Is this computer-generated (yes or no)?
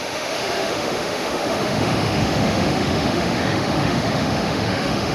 yes